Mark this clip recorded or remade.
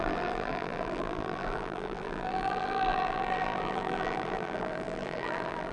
remade